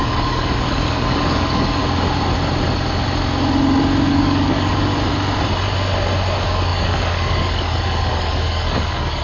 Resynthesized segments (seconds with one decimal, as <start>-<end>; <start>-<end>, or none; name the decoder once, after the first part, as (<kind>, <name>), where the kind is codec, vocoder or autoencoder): 0.0-1.8 (codec, DAC); 4.1-4.9; 6.3-9.2